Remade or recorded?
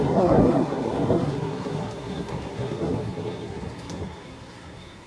remade